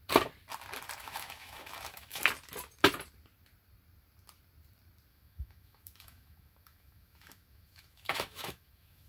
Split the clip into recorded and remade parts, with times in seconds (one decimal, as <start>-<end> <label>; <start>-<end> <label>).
0.0-1.0 recorded; 1.0-2.2 remade; 2.2-5.1 recorded; 5.1-9.1 remade